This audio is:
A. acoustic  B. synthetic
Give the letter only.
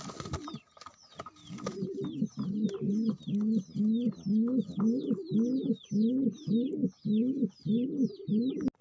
A